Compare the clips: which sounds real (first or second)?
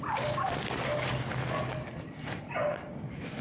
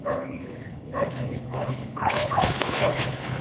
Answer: first